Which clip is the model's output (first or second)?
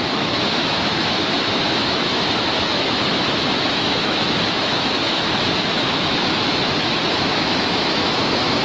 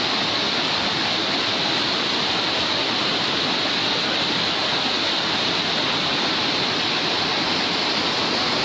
first